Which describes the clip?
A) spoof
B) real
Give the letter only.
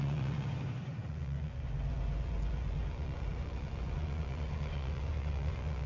A